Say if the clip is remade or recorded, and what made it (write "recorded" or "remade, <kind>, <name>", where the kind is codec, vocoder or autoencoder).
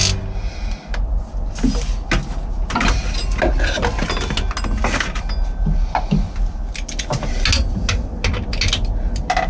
recorded